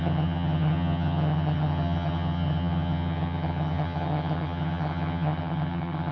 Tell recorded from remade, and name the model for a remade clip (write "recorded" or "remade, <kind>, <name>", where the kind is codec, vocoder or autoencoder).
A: remade, vocoder, HiFi-GAN